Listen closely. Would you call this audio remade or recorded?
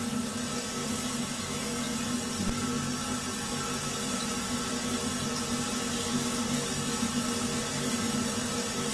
recorded